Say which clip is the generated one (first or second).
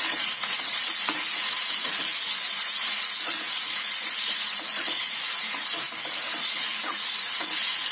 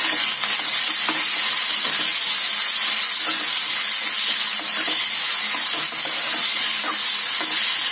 first